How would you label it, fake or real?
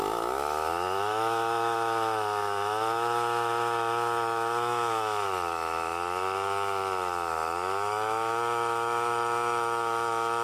fake